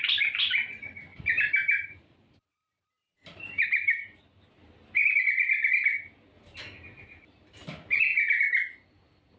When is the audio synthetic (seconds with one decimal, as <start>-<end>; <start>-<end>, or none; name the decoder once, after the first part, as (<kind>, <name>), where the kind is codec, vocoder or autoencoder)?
1.1-4.2 (vocoder, BigVGAN v2)